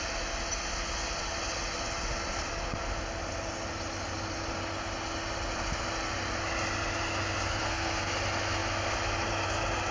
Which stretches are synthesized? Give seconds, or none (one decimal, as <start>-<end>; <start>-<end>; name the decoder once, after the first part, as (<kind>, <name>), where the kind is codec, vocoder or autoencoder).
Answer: 7.6-8.1 (codec, SNAC)